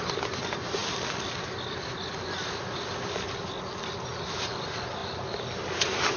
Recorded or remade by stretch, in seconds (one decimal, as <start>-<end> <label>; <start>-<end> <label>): 0.0-6.2 recorded